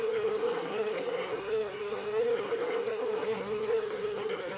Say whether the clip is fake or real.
fake